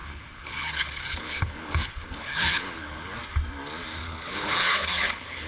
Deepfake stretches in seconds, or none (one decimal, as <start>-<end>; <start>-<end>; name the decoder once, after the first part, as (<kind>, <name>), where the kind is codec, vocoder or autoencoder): 0.0-3.1 (codec, HILCodec); 3.9-5.5